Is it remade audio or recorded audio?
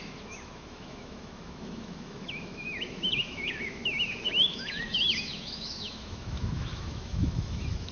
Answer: remade